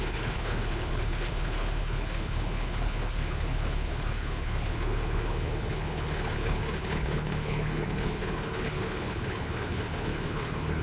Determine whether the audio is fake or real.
fake